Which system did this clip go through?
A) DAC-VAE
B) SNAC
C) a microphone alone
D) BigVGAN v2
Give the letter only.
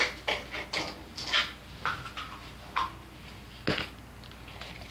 C